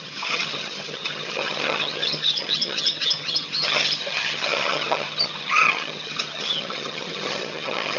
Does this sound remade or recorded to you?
remade